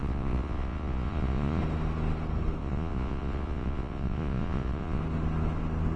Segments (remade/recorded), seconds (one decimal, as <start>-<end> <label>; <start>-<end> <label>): 0.0-1.6 remade; 1.6-2.6 recorded; 2.6-5.0 remade; 5.0-6.0 recorded